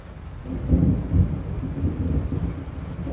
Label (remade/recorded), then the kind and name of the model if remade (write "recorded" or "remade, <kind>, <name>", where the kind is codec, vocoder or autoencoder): recorded